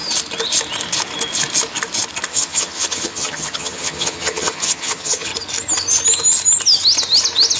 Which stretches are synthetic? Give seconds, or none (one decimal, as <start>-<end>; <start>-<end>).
2.3-5.3